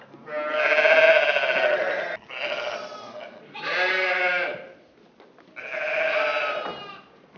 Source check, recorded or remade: recorded